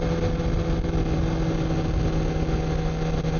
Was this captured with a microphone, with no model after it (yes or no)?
yes